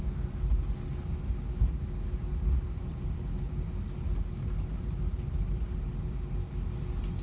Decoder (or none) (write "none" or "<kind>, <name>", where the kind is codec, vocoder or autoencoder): none